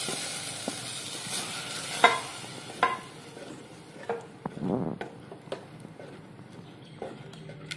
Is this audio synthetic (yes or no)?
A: no